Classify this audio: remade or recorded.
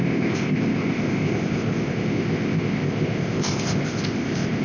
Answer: remade